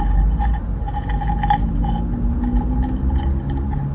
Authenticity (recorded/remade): recorded